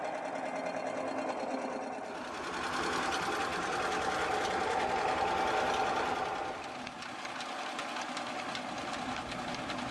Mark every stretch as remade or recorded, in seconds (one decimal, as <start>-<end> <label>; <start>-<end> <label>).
0.0-9.9 recorded